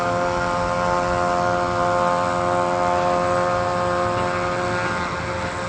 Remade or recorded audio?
recorded